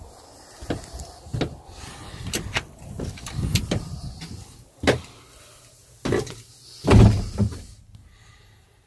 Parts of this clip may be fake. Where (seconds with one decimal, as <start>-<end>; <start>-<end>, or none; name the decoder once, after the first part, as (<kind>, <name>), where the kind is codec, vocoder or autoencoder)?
none